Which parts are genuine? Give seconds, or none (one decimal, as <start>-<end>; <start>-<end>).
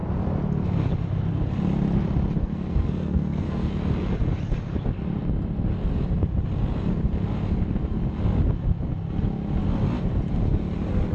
0.0-2.4; 3.7-11.1